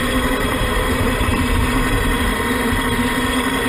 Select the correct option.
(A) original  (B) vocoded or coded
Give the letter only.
B